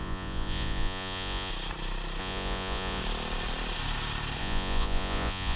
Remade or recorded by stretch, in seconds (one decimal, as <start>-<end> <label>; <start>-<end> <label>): 0.0-1.5 remade; 1.5-2.2 recorded; 2.2-3.0 remade; 3.0-4.4 recorded; 4.4-5.6 remade